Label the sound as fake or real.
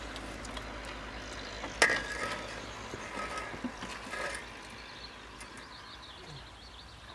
real